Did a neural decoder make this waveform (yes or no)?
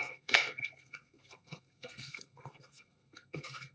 yes